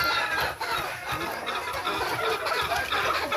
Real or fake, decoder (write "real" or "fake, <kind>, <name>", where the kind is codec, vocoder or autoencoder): real